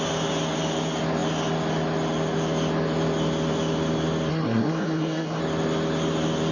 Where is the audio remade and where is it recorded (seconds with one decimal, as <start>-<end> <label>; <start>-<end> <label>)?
0.0-4.3 recorded; 4.3-5.4 remade; 5.4-6.5 recorded